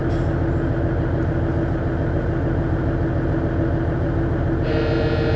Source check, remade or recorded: recorded